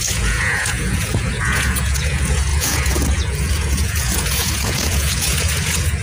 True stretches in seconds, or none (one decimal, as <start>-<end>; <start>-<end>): none